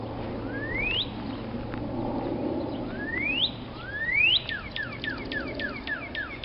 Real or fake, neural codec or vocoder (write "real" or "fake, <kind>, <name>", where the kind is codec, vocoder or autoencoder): real